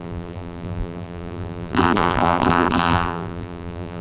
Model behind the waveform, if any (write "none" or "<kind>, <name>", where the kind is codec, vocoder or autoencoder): vocoder, BigVGAN v2